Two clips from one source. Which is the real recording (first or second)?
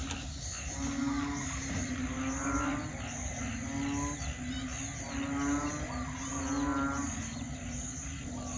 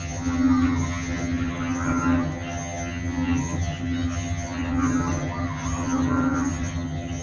first